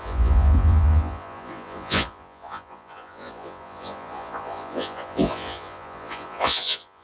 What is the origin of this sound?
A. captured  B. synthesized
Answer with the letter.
B